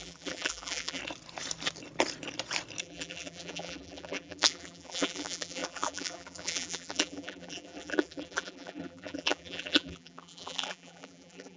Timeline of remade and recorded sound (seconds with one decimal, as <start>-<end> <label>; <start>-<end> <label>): 0.0-1.0 remade; 1.0-2.8 recorded; 2.8-11.6 remade